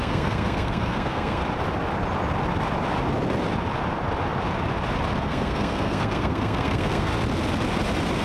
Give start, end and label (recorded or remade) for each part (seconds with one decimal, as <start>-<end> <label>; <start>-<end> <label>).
0.0-1.4 remade; 1.4-5.2 recorded; 5.2-7.1 remade; 7.1-8.2 recorded